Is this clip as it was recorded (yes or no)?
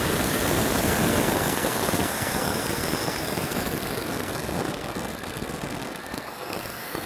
no